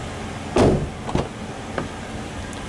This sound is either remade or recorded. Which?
recorded